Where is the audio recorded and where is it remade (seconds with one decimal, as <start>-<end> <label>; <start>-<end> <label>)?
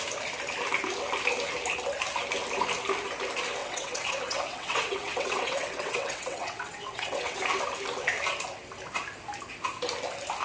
0.0-3.6 recorded; 3.6-7.4 remade; 7.4-10.4 recorded